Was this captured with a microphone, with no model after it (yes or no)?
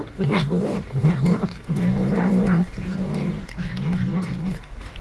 no